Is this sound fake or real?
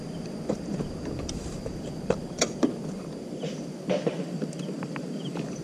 fake